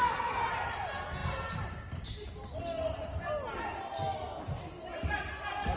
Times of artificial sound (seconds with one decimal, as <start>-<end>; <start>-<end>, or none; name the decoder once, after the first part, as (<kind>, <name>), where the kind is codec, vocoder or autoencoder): none